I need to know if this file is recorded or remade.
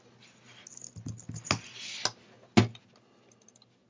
recorded